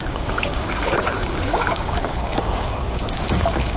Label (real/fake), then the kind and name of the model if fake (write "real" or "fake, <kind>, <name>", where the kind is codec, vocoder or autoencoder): fake, codec, DAC